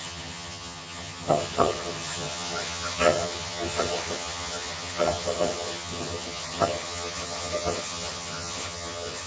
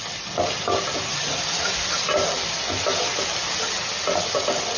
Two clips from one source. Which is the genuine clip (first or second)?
second